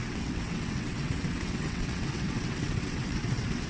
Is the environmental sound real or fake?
fake